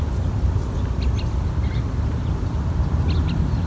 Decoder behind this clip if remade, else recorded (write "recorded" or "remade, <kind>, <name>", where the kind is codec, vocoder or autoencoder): recorded